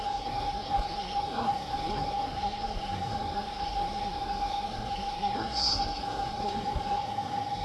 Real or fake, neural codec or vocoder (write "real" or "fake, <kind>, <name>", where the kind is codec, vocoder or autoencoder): fake, codec, SNAC